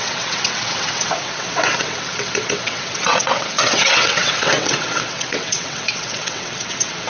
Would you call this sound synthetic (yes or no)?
yes